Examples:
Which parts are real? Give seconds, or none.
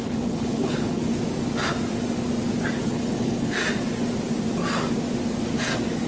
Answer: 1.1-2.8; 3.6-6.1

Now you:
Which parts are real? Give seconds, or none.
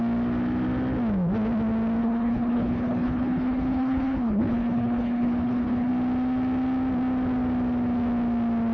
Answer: 0.0-2.0; 5.9-8.7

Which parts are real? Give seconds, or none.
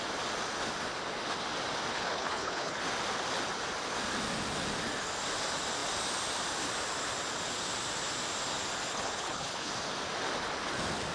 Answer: 0.0-1.9; 2.8-8.9; 9.7-11.1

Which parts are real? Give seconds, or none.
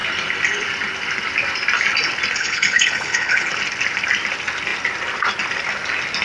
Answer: 0.0-2.4; 3.5-6.2